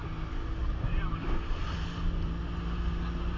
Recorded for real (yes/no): yes